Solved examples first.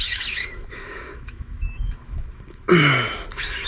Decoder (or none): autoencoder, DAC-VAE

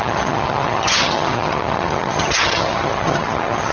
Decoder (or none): vocoder, HiFi-GAN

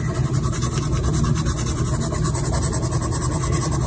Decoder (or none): none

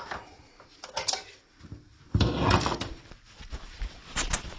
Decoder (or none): none